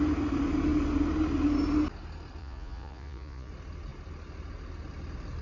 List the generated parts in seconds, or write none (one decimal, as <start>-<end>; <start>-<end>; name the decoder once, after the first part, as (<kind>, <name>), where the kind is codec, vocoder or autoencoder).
2.4-3.5 (vocoder, Vocos)